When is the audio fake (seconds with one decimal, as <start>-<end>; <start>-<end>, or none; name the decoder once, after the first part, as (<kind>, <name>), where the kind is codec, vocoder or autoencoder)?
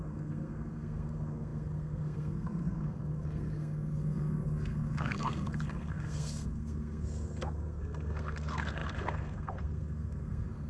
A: 0.0-10.7 (codec, SNAC)